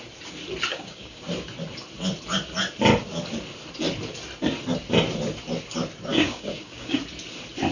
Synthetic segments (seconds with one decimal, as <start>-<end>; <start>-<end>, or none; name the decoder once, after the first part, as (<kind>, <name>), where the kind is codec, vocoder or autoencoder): 0.7-1.2 (codec, DAC); 6.1-7.0